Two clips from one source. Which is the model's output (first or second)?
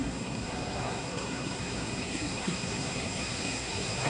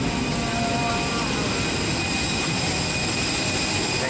first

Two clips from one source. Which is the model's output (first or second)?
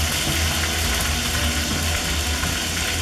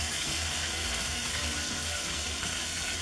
second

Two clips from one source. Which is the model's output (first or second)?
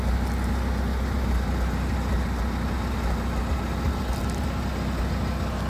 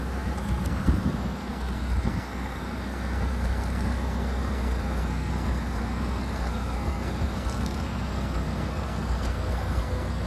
second